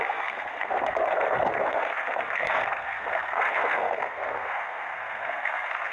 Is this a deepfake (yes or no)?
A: yes